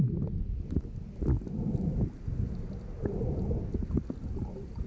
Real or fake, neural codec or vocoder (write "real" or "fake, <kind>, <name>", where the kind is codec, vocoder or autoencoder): real